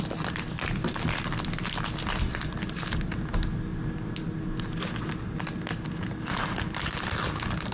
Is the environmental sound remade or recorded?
recorded